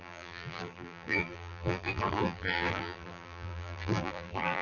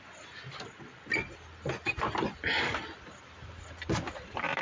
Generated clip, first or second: first